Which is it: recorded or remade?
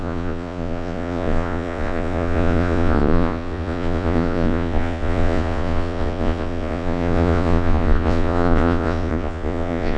remade